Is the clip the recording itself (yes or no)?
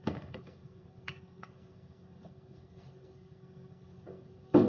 no